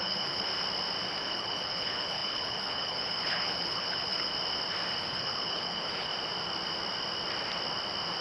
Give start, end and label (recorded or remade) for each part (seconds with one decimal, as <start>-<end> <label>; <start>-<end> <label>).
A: 0.0-0.5 remade; 0.5-1.2 recorded; 1.2-4.3 remade; 4.3-5.0 recorded; 5.0-6.1 remade; 6.1-8.2 recorded